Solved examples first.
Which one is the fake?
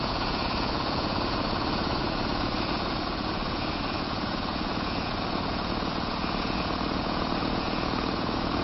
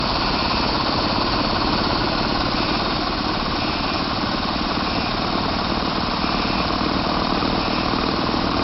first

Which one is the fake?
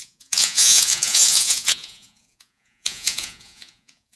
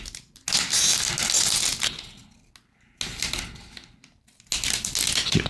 first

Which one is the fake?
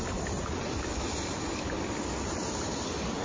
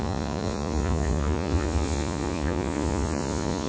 second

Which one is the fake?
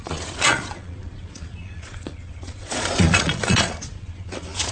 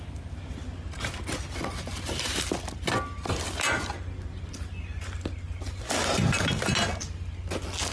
first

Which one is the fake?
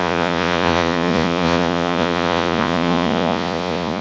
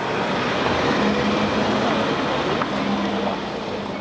first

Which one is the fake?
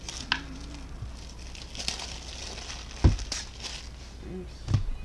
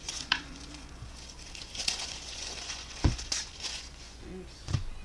second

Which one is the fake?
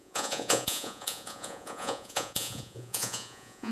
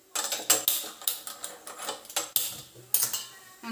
first